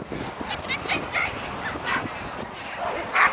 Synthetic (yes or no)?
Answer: no